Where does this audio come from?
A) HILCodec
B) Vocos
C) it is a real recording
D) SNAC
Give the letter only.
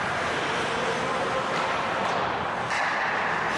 C